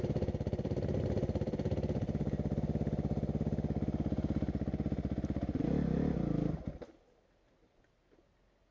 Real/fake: real